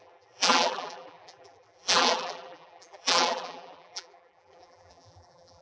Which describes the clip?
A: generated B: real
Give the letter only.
A